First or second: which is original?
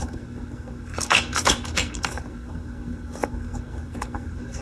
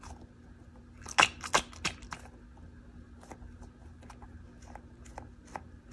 second